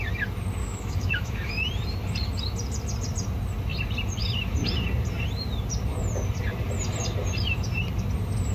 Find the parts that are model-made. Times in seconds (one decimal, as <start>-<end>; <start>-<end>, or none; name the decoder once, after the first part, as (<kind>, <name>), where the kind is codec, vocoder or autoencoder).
0.6-1.5 (autoencoder, DAC-VAE)

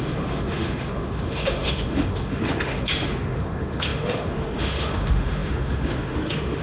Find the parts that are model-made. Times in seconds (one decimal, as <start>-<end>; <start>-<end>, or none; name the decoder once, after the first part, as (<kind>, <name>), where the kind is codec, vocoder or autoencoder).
0.0-6.6 (autoencoder, DAC-VAE)